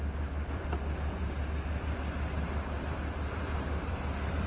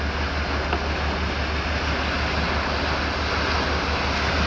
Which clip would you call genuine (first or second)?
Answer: second